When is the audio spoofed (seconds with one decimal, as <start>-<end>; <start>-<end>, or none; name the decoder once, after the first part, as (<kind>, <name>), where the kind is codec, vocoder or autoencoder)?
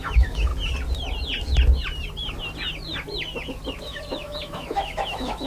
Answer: 0.0-0.5 (autoencoder, DAC-VAE); 3.8-5.5